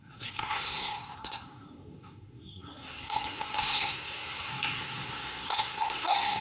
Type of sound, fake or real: fake